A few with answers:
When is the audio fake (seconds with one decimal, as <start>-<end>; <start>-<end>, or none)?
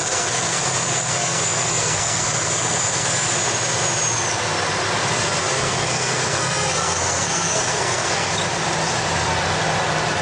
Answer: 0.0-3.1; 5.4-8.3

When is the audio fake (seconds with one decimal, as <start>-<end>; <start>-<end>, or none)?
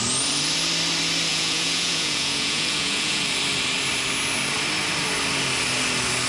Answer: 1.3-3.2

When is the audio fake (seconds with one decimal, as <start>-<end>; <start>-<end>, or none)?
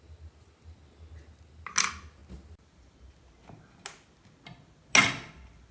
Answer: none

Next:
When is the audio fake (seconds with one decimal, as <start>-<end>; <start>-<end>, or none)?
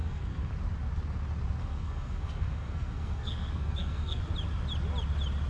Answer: 0.0-0.5; 1.6-4.2